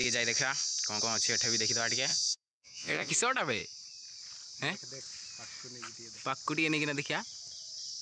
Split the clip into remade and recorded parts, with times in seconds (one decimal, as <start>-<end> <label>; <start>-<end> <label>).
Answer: 0.0-2.1 recorded; 2.1-3.1 remade; 3.1-8.0 recorded